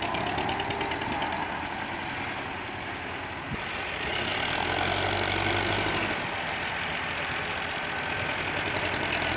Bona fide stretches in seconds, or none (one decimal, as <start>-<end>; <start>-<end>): 0.0-9.4